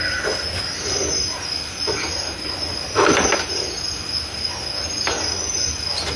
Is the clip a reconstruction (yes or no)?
no